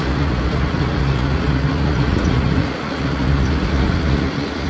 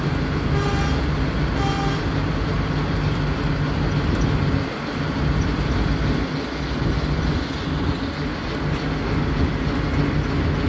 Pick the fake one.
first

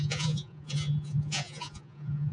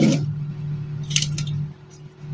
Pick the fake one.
first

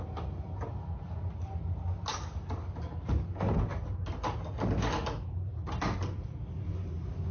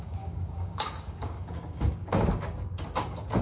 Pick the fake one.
second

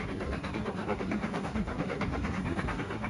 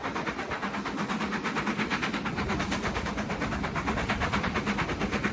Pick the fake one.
first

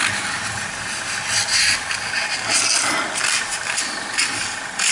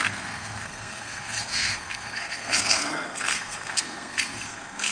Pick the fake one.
second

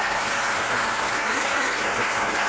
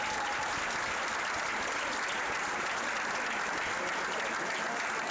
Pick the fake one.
first